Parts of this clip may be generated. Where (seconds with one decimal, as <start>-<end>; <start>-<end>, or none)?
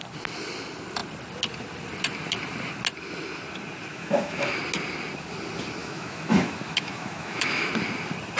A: 3.9-4.6; 5.8-7.7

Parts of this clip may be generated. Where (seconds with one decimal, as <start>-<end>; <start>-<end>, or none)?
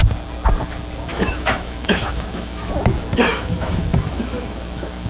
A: 1.1-2.7; 3.3-5.1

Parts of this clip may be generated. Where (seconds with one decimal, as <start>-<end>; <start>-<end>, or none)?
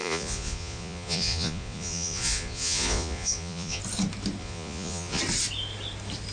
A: 0.0-3.8; 4.4-5.2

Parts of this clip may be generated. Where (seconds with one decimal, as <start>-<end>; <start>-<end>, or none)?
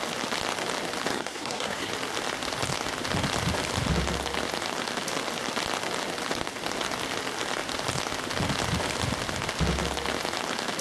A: 1.1-1.9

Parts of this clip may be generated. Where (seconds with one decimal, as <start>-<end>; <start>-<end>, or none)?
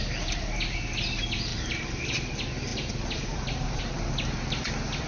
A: 1.5-2.3; 2.7-3.8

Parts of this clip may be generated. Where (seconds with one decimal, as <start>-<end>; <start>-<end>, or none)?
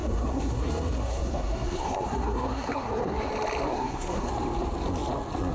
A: 0.0-3.3; 3.7-4.3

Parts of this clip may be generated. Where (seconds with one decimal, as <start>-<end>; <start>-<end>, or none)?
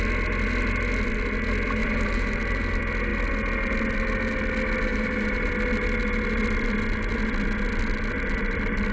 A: 1.8-2.6; 4.9-5.5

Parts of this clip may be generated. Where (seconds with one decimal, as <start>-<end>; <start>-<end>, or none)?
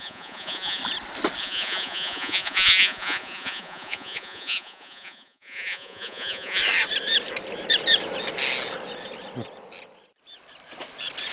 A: 0.0-0.8; 1.4-6.6